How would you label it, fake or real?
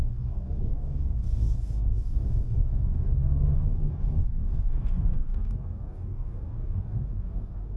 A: fake